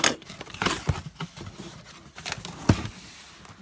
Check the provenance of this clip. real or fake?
real